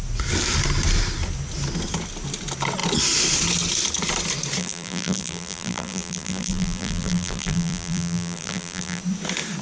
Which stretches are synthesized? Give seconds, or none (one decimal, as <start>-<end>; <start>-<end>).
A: 4.6-9.0